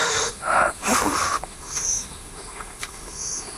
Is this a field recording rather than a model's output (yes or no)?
no